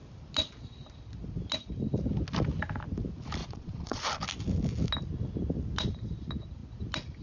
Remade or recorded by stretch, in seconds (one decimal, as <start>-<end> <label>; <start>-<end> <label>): 0.0-3.4 recorded; 3.4-4.0 remade; 4.0-7.2 recorded